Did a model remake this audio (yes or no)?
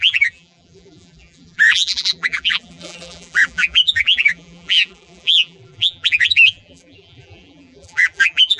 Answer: yes